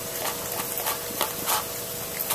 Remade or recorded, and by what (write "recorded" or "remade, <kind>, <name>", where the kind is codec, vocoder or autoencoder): recorded